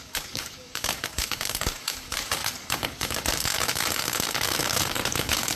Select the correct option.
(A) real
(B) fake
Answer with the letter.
B